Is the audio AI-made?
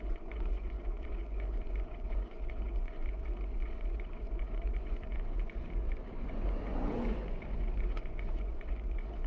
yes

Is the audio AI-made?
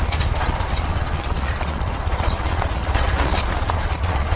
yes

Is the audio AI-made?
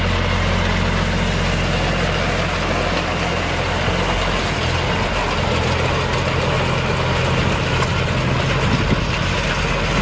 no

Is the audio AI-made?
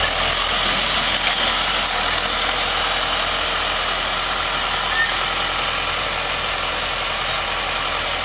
no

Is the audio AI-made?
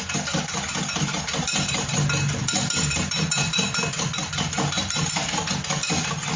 no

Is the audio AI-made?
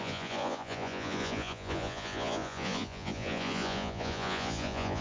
yes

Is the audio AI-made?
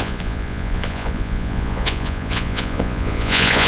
yes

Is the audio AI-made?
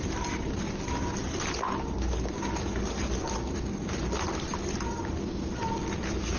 no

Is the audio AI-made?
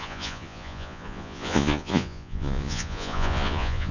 yes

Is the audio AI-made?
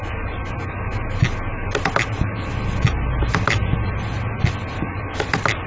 no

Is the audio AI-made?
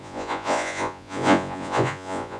yes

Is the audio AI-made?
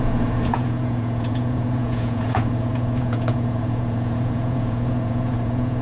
yes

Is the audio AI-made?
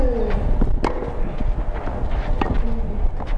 no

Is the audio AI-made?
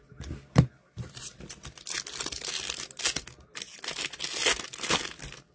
no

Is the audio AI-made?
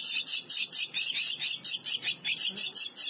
no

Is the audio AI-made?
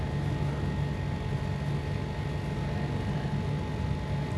no